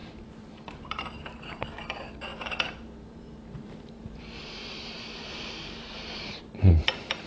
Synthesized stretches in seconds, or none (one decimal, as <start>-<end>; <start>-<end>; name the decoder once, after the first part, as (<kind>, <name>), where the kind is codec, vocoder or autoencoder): 0.0-7.3 (vocoder, BigVGAN v2)